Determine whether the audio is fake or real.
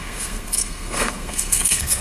fake